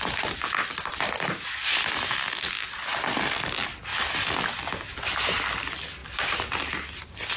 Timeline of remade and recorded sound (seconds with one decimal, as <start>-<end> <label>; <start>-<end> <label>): 0.0-7.4 recorded